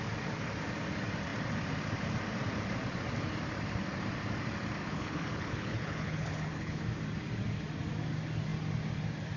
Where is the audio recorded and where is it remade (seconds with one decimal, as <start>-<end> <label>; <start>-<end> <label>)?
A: 0.0-4.8 recorded; 4.8-6.8 remade; 6.8-9.4 recorded